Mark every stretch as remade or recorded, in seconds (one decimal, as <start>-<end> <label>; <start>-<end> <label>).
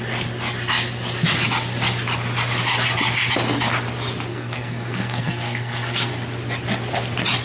0.0-4.3 recorded; 4.3-6.1 remade; 6.1-7.4 recorded